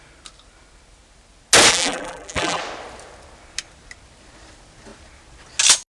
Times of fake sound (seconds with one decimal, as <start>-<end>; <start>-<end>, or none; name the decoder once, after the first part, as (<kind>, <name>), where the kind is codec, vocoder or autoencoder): 1.7-2.6 (vocoder, BigVGAN v2)